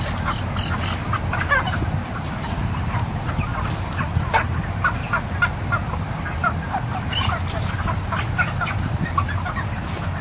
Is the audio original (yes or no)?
yes